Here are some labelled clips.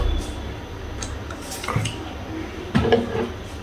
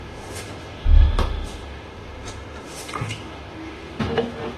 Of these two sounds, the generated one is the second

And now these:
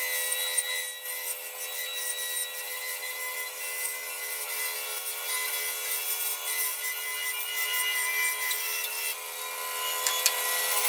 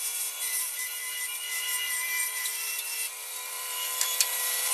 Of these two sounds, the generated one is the second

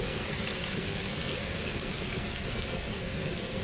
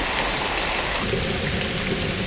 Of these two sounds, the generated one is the first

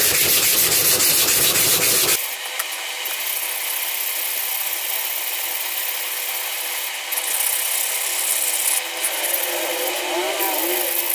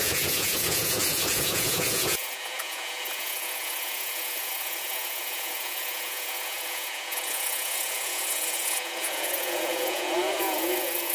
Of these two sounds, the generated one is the second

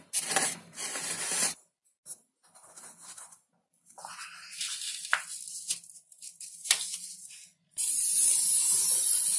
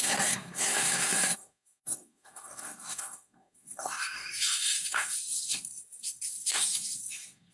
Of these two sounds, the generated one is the second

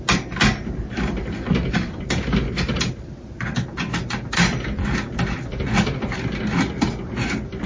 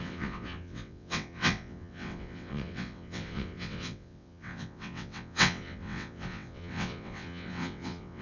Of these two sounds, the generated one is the second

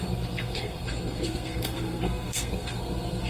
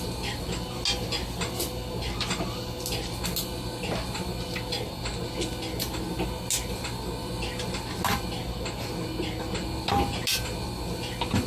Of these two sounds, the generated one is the first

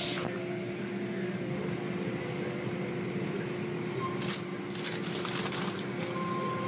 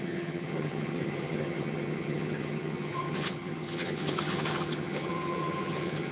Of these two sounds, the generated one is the second